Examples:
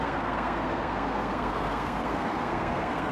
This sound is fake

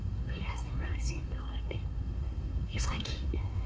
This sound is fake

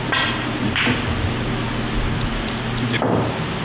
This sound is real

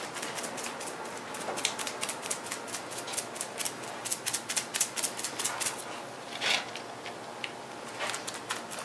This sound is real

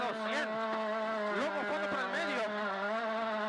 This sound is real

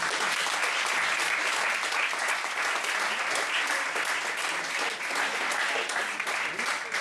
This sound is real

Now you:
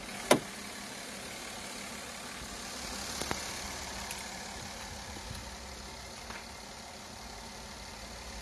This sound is real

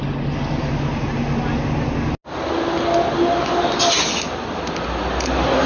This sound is real